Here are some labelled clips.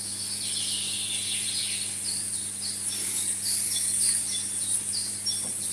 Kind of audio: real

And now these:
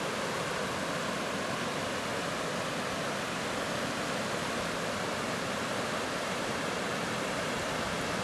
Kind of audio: real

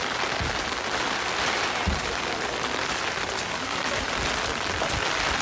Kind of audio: fake